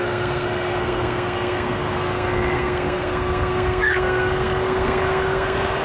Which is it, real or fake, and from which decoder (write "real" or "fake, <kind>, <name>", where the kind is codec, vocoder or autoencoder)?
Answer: fake, codec, SNAC